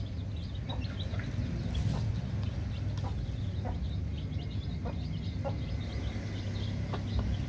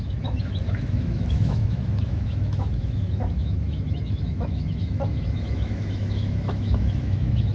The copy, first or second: second